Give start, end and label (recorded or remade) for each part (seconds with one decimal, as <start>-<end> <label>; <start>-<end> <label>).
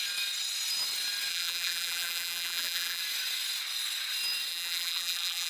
0.0-1.3 recorded; 1.3-3.0 remade; 3.0-4.5 recorded; 4.5-5.5 remade